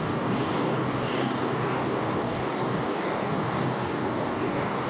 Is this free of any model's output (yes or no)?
no